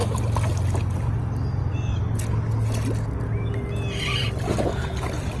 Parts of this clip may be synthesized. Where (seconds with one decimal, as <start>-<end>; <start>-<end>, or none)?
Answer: none